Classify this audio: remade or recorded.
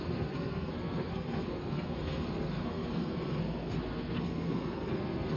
remade